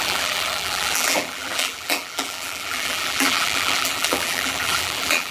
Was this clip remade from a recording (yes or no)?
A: yes